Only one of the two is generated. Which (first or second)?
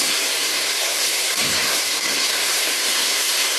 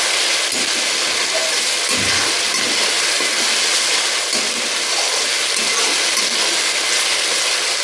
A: first